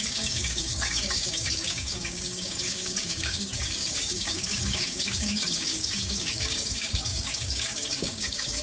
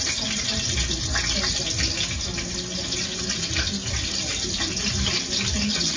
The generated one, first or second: first